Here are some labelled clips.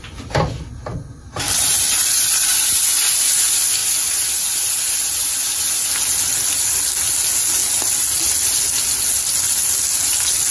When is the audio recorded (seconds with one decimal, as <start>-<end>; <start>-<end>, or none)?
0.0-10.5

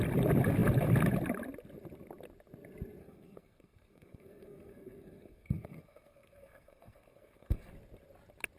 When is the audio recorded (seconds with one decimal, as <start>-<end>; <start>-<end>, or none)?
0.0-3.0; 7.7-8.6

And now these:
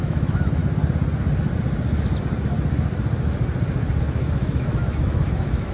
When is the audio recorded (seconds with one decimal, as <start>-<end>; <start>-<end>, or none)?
0.6-4.0

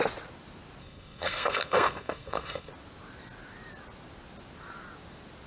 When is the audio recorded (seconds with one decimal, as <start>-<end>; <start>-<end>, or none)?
0.0-0.8; 2.7-5.5

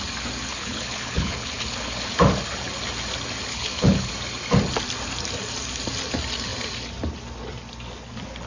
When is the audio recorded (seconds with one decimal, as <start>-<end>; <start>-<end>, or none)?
0.0-0.5; 2.1-3.5; 4.1-8.5